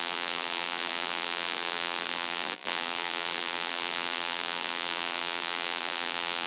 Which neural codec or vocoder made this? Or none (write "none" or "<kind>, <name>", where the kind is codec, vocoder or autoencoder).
vocoder, BigVGAN v2